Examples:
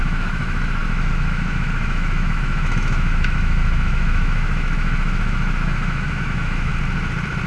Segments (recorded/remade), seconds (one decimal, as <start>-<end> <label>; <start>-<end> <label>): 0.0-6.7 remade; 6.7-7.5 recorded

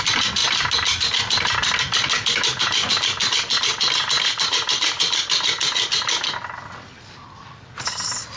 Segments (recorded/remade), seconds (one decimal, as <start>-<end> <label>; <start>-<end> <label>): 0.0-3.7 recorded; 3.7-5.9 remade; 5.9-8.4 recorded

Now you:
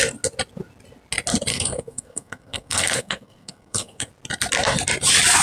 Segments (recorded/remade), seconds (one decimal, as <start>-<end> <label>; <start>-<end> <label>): 0.0-1.5 recorded; 1.5-4.1 remade; 4.1-5.4 recorded

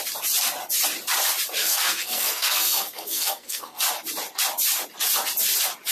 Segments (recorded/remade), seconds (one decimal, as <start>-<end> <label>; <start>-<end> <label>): 0.0-1.6 recorded; 1.6-3.8 remade; 3.8-5.9 recorded

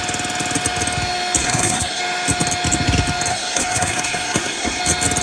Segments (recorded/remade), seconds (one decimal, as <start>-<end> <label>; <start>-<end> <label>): 0.0-1.4 recorded; 1.4-2.0 remade; 2.0-3.3 recorded; 3.3-4.8 remade; 4.8-5.2 recorded

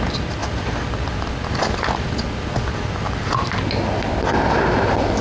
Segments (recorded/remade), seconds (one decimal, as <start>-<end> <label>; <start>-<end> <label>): 0.0-0.4 recorded; 0.4-3.1 remade; 3.1-5.2 recorded

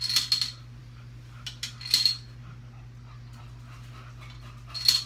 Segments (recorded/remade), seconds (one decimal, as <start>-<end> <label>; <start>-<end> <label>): 0.0-5.1 recorded

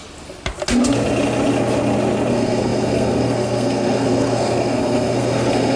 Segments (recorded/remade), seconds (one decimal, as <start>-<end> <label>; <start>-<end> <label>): 0.0-2.3 recorded; 2.3-5.8 remade